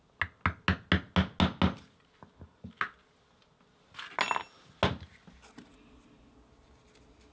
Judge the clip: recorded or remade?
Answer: recorded